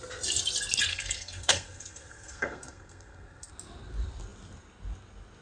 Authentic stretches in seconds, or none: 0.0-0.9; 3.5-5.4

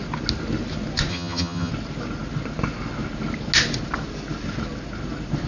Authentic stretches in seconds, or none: 0.0-1.1; 1.7-5.5